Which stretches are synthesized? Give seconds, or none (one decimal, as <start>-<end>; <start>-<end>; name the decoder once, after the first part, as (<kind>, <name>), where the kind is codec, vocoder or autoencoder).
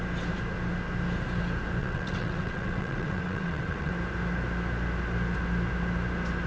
1.8-3.9 (vocoder, WaveNeXt)